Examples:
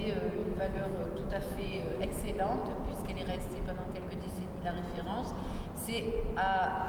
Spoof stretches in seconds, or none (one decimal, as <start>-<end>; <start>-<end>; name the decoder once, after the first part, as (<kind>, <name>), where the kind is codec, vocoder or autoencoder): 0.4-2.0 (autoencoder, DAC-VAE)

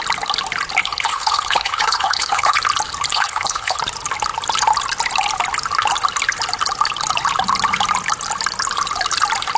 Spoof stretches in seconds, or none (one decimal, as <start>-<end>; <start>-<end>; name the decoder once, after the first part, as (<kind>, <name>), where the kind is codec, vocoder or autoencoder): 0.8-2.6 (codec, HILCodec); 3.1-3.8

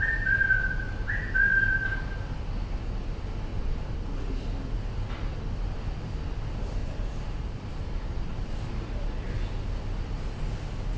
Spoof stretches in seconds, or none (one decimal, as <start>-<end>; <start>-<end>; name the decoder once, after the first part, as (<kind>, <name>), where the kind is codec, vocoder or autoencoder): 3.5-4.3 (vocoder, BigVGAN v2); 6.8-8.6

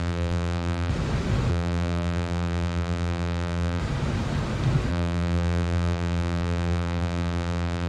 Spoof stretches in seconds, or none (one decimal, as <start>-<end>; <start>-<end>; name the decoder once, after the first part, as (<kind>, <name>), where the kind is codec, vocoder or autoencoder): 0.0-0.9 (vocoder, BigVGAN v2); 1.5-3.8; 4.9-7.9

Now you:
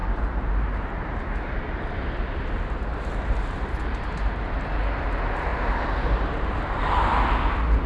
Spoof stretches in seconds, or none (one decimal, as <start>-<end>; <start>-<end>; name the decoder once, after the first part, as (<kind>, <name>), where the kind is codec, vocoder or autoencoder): 0.0-1.8 (vocoder, BigVGAN v2); 2.9-3.8; 5.5-6.8